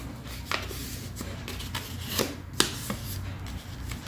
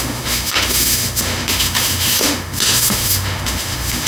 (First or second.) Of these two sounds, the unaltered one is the first